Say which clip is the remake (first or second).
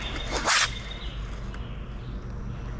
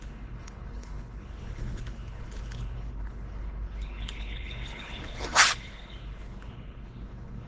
second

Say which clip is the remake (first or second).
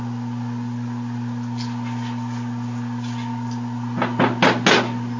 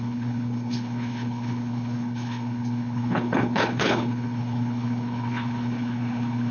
second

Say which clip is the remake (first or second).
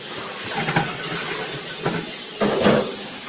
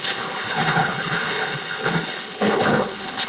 second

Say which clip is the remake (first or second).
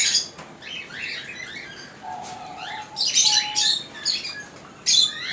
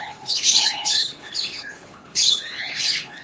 second